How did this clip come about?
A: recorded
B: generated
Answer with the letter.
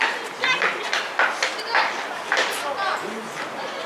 A